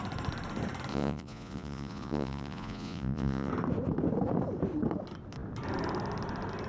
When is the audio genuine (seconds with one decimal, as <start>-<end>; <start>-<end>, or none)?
0.0-0.9; 3.5-6.7